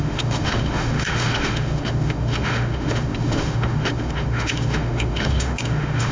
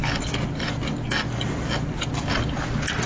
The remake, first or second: first